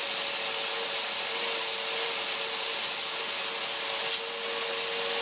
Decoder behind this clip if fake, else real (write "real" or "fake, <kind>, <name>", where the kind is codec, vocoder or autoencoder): real